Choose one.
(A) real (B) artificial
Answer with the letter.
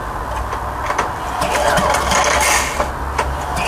A